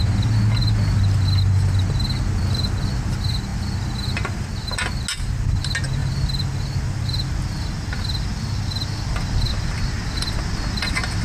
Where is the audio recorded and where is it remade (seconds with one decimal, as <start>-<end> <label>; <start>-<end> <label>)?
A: 0.0-11.2 recorded